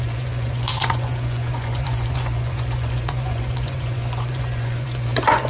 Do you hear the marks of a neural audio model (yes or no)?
yes